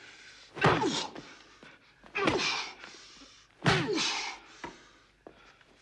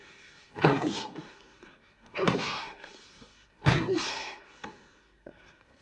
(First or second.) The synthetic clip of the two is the second